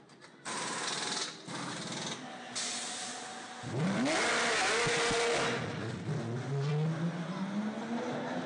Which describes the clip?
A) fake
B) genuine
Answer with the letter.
B